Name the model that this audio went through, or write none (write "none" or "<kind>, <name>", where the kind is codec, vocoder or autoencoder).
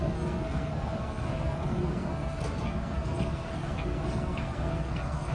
codec, SNAC